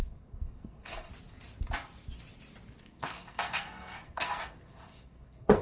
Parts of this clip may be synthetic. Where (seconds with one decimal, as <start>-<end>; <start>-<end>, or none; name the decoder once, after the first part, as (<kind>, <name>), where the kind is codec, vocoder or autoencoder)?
0.0-1.1 (codec, SNAC); 2.8-5.6

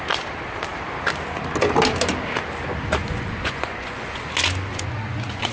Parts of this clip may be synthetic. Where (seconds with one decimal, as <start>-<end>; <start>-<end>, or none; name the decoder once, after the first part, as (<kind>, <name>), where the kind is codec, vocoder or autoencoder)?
3.0-4.2 (vocoder, Vocos); 4.7-5.5

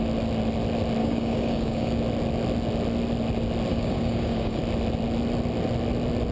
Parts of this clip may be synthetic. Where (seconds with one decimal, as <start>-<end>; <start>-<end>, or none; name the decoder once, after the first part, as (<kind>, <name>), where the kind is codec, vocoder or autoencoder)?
1.0-2.0 (codec, DAC); 3.7-4.6

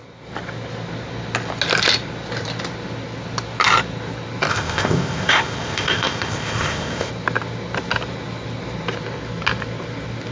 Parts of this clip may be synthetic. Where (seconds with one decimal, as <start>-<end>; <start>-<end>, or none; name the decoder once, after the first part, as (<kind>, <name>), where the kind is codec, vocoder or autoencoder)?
4.5-7.1 (codec, ZipCodec)

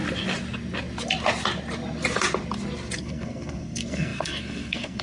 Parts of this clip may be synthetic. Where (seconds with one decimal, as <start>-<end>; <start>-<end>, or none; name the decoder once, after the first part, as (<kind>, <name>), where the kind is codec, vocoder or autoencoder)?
3.0-5.0 (codec, SNAC)

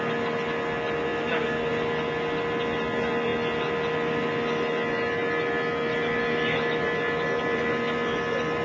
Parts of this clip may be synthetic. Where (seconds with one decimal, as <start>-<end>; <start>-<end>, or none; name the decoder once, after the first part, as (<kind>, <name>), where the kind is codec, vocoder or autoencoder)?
none

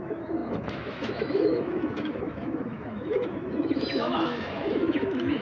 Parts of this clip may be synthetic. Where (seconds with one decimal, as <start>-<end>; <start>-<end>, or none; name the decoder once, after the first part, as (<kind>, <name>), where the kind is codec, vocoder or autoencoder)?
0.0-5.4 (autoencoder, DAC-VAE)